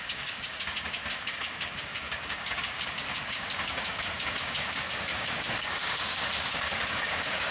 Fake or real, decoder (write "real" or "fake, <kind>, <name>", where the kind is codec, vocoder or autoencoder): fake, codec, DAC